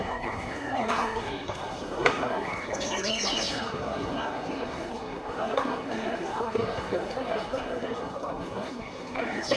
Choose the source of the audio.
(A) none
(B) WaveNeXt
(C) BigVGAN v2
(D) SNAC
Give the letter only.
D